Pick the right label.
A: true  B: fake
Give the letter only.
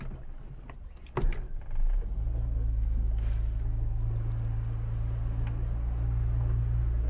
A